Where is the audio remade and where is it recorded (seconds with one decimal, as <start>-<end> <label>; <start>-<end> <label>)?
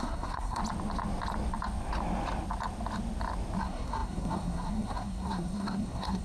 0.0-0.6 remade; 0.6-3.6 recorded; 3.6-6.2 remade